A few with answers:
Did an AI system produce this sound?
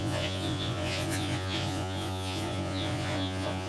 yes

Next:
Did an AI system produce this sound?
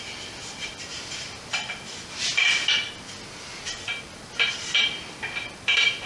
no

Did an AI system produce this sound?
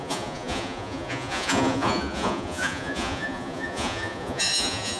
yes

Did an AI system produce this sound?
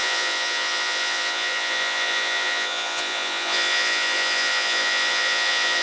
yes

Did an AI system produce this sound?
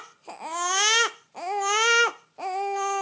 no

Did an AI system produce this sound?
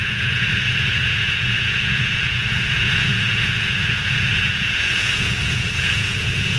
yes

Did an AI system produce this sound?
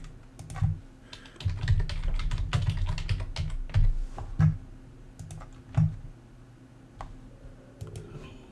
no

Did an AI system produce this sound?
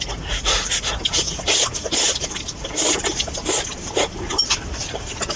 no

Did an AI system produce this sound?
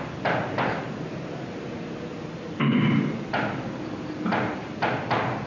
no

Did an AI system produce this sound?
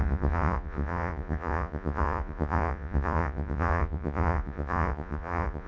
yes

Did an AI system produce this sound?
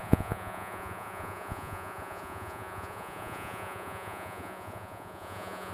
yes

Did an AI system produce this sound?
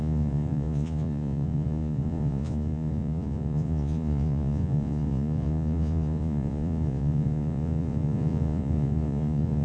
yes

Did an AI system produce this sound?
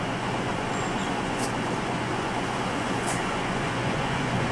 yes